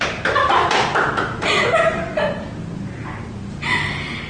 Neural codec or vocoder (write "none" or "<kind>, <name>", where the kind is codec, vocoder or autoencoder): none